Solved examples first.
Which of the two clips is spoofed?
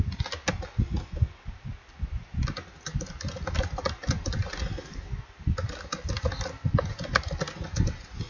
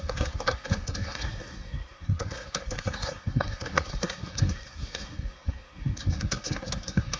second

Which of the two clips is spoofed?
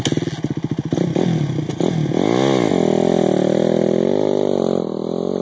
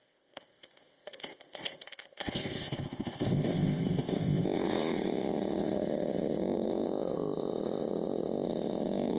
second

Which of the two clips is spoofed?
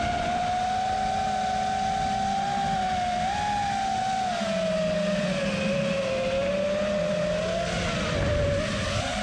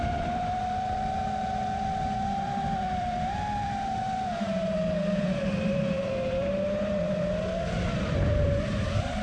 second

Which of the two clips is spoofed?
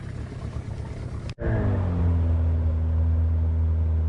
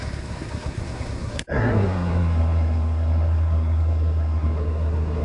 second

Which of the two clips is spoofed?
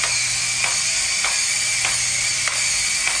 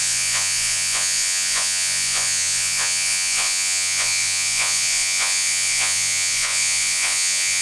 second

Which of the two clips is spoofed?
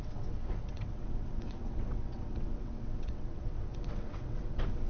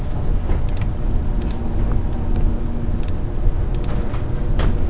first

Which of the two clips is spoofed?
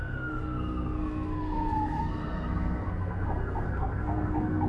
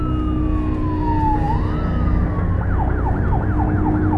first